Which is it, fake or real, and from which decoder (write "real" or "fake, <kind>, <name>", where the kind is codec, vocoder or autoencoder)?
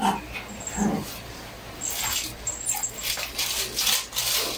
real